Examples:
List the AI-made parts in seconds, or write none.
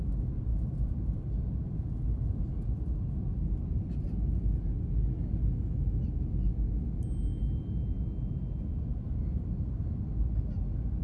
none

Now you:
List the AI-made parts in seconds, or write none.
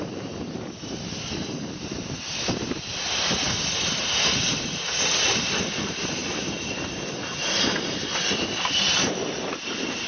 0.0-10.1 (vocoder, BigVGAN v2)